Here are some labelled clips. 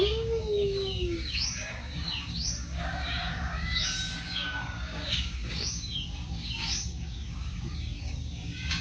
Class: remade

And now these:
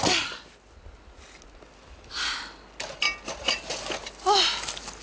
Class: recorded